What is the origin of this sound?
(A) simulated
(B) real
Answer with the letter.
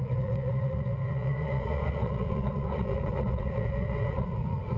A